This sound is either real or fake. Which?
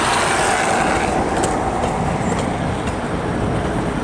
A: real